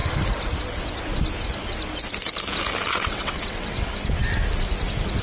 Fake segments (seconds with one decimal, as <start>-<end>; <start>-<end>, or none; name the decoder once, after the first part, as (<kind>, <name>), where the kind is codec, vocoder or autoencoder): 2.9-3.9 (vocoder, WaveNeXt)